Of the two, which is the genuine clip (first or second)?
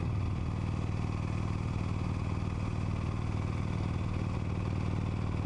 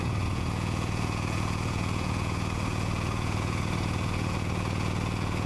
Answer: first